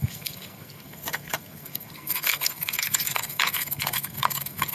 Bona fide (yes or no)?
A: no